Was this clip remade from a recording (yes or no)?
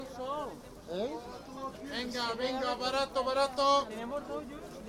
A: no